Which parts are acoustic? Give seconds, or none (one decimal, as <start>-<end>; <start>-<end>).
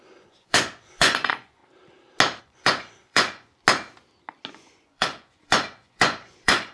1.6-2.4; 3.5-4.5